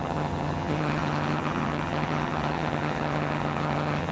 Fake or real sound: fake